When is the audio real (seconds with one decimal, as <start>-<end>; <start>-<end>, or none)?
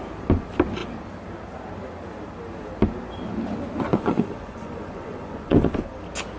0.0-3.9; 5.7-6.4